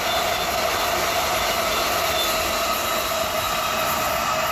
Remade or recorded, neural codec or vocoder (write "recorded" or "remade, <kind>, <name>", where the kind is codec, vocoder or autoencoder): recorded